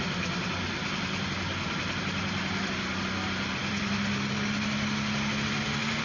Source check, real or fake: real